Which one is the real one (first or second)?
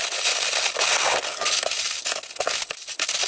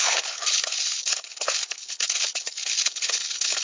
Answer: first